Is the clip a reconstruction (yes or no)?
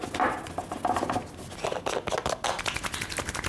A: no